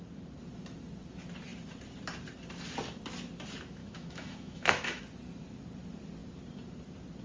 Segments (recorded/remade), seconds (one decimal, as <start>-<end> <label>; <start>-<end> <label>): 0.0-3.8 recorded; 3.8-5.0 remade; 5.0-7.2 recorded